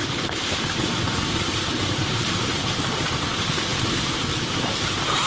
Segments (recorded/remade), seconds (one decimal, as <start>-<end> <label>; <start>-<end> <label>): 0.0-5.3 recorded